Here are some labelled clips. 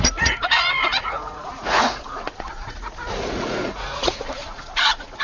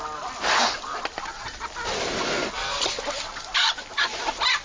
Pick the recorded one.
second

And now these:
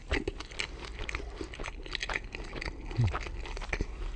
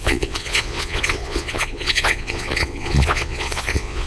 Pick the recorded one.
first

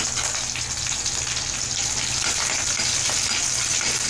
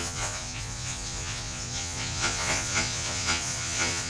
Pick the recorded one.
first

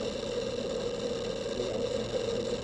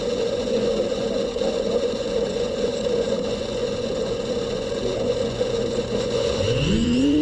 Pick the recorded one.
first